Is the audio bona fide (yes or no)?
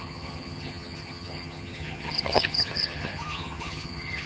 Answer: no